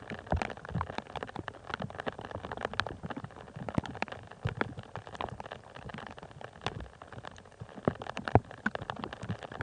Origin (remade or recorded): recorded